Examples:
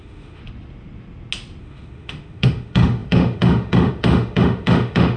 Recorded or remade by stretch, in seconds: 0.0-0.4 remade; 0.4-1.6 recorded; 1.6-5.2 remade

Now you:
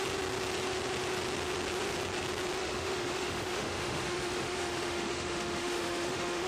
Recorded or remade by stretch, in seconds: 0.0-2.6 recorded; 2.6-6.5 remade